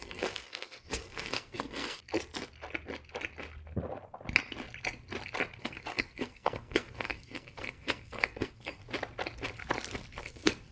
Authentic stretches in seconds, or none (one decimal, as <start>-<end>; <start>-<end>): 2.0-5.6; 8.8-10.2